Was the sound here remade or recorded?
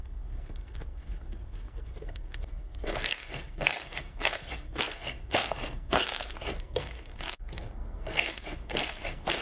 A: remade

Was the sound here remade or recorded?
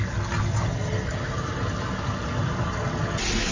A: recorded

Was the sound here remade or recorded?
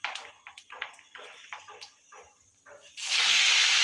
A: recorded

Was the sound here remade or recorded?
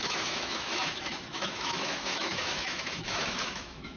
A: remade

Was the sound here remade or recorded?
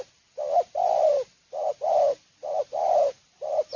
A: recorded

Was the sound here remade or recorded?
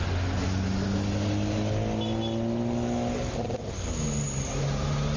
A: recorded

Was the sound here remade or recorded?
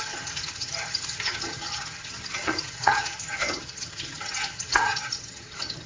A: remade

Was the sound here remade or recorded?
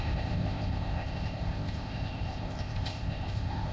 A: remade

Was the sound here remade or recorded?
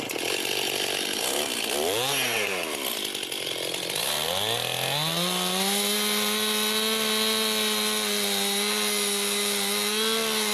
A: recorded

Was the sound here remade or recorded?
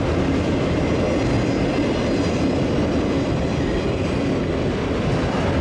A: recorded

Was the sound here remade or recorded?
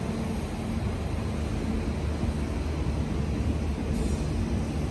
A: recorded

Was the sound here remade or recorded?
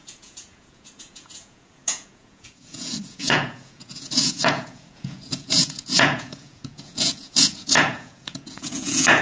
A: remade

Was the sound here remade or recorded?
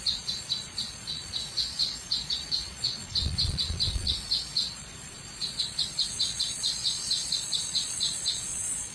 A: remade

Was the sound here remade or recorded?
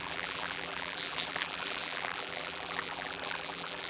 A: remade